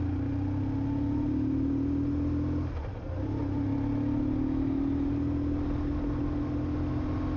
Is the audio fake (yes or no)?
no